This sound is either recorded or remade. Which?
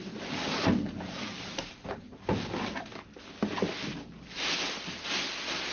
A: recorded